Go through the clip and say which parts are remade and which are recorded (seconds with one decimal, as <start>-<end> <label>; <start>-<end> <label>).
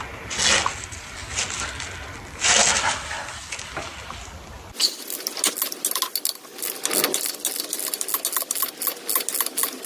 0.0-9.9 recorded